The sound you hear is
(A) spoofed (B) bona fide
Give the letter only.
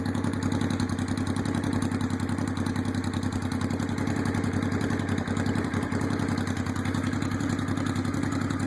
B